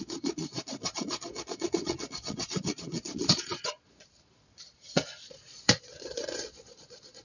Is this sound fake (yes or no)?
yes